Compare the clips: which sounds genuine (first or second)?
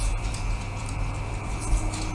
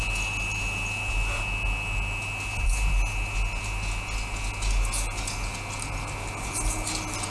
second